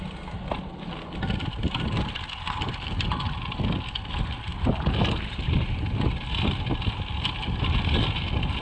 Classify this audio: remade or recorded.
recorded